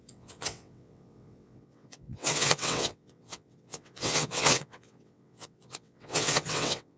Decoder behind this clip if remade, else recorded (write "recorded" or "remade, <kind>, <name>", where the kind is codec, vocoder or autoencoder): remade, vocoder, WaveNeXt